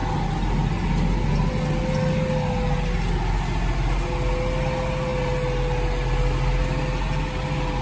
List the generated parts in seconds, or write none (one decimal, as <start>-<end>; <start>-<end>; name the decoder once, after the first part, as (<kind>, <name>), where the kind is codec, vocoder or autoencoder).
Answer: none